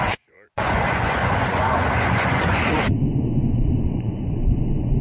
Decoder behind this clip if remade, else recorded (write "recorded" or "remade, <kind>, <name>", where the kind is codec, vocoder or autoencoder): remade, vocoder, Vocos